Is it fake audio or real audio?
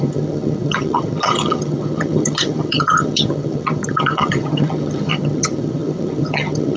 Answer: fake